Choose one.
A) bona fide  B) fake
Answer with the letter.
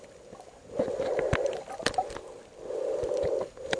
A